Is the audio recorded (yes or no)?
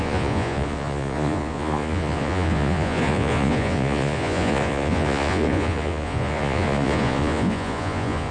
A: no